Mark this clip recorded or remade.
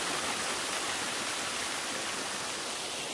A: recorded